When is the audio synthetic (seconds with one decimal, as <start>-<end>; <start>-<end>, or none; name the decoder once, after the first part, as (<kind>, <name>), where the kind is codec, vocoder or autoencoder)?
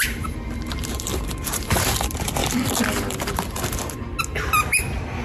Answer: 1.1-1.8 (vocoder, BigVGAN v2)